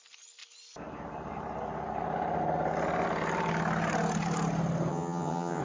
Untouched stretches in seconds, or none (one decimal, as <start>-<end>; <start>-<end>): 0.0-4.9

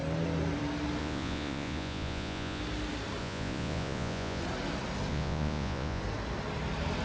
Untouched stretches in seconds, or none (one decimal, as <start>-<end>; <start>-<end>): 0.0-1.0; 2.6-3.2; 4.4-5.1; 6.0-7.0

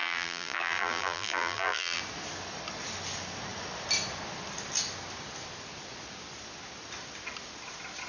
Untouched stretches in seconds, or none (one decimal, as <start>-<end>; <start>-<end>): 2.0-8.1

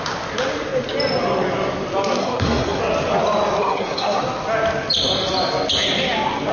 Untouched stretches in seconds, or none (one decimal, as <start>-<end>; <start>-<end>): 0.0-2.2; 2.8-3.6; 4.2-6.5

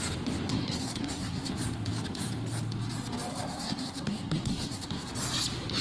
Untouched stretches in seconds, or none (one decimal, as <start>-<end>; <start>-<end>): 0.0-0.5; 1.5-3.3; 5.1-5.8

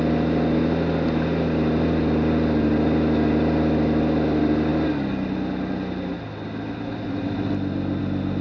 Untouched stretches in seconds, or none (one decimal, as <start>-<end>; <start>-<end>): 0.0-8.4